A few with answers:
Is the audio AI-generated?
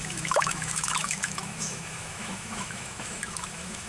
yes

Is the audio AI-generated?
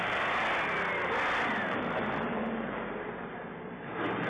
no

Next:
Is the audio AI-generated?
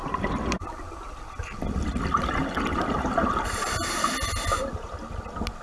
no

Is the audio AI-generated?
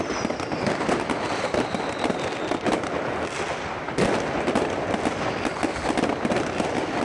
no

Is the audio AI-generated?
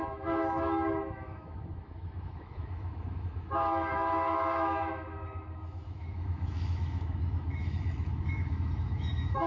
yes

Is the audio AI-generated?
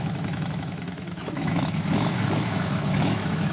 yes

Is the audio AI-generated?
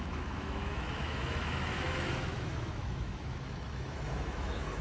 yes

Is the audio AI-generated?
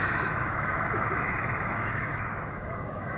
yes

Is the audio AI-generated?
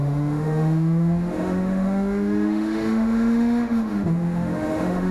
yes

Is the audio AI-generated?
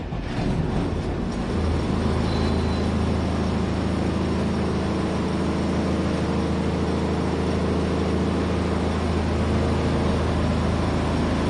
no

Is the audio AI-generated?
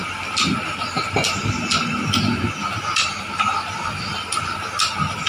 no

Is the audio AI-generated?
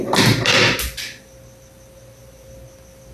no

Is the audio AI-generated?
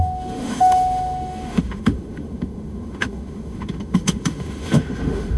yes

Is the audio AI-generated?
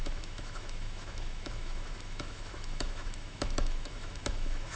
yes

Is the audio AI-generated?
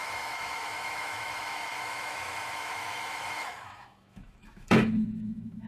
yes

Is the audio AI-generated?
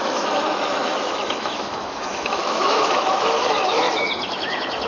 yes